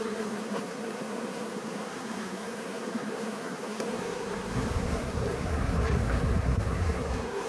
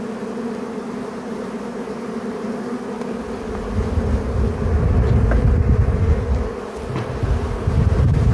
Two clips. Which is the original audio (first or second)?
second